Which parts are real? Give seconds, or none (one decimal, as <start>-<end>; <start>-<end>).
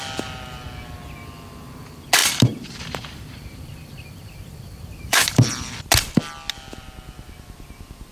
0.0-2.2; 5.6-8.1